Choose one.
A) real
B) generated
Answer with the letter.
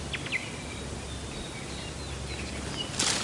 A